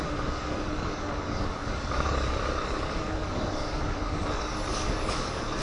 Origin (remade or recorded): remade